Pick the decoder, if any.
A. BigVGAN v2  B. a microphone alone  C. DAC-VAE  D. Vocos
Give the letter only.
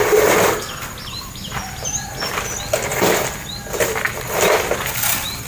B